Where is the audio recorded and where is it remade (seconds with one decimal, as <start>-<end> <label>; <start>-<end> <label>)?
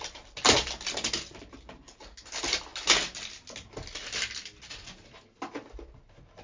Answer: 0.0-6.4 recorded